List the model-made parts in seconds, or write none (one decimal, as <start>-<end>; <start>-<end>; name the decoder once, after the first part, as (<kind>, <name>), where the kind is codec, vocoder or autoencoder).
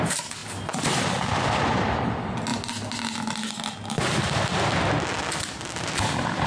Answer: none